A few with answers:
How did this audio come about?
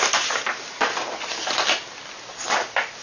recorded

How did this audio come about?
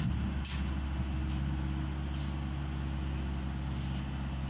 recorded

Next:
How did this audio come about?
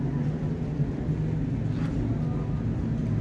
recorded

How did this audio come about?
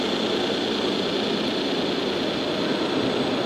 recorded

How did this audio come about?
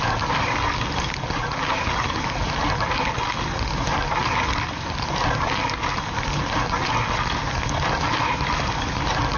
recorded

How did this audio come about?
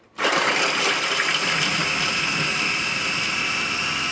recorded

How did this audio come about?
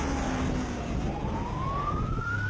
recorded